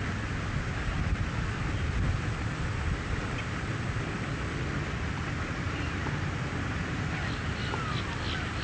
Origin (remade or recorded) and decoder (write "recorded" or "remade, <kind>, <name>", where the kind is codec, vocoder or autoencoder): recorded